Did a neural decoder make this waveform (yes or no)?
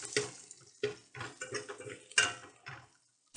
no